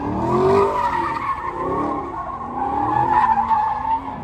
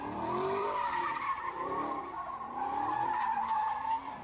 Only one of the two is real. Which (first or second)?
first